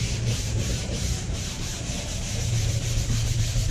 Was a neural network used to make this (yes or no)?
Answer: yes